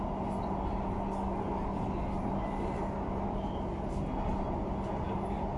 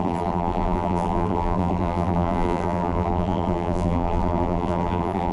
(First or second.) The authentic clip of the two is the first